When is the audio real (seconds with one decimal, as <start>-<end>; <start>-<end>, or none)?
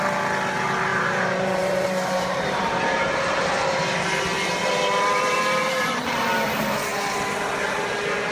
0.0-0.9; 3.8-4.6; 5.9-8.3